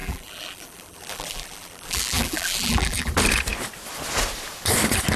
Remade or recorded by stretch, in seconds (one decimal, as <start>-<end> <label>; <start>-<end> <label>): 0.0-3.1 remade; 3.1-5.2 recorded